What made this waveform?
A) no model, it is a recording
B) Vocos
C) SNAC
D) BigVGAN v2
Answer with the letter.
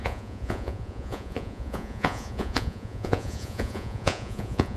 B